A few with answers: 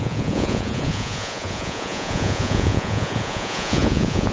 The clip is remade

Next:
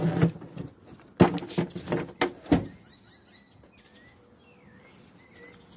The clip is recorded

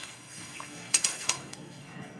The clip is remade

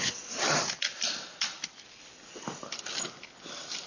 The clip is recorded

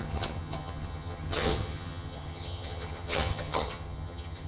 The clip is remade